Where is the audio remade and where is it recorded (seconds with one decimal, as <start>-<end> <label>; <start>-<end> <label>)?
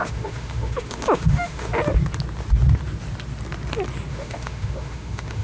0.0-1.7 remade; 1.7-4.1 recorded; 4.1-5.4 remade